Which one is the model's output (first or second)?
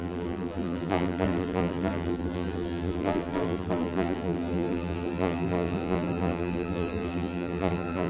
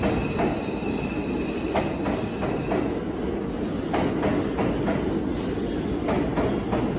first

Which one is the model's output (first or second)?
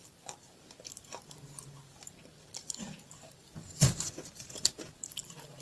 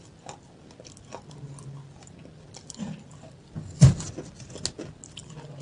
first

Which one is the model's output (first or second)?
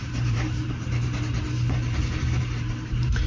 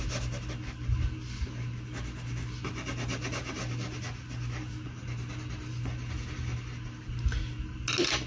first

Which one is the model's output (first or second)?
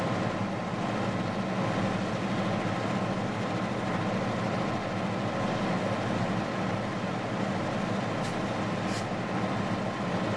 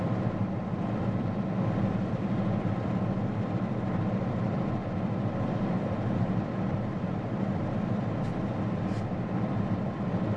second